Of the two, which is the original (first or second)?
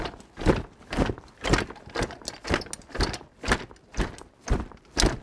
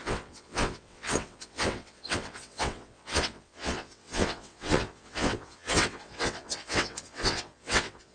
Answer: first